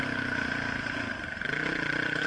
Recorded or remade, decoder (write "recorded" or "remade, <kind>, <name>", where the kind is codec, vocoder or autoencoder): recorded